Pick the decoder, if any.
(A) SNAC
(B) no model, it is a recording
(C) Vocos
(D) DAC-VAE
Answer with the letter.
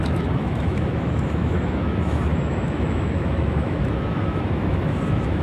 D